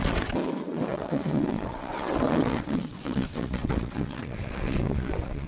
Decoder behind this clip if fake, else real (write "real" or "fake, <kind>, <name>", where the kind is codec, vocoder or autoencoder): fake, vocoder, WaveNeXt